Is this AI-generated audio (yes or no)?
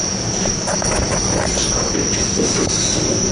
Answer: no